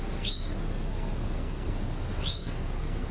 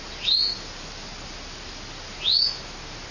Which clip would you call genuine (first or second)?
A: second